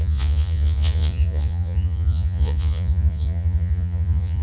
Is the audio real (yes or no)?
no